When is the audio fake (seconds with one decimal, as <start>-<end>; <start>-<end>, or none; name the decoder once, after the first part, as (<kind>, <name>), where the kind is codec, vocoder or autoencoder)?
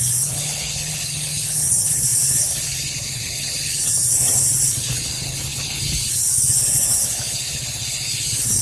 0.0-8.6 (codec, HILCodec)